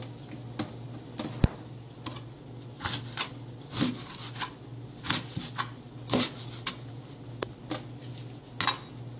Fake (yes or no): no